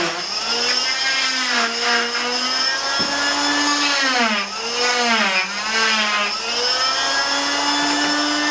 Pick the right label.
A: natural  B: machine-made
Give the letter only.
A